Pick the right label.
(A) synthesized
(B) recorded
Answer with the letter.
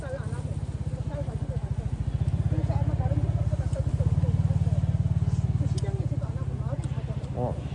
B